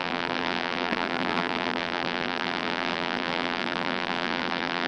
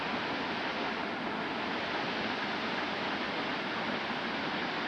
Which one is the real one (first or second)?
second